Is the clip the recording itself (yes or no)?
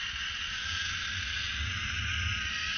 yes